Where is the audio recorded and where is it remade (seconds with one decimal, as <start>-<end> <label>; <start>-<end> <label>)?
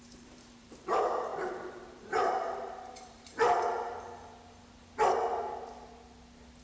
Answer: 0.0-3.3 remade; 3.3-6.6 recorded